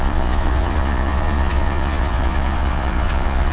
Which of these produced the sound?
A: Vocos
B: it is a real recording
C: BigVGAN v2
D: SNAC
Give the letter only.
A